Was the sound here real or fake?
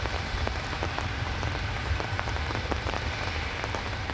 fake